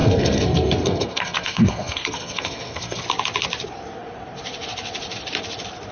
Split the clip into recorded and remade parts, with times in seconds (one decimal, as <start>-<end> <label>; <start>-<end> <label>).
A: 0.0-3.0 remade; 3.0-5.9 recorded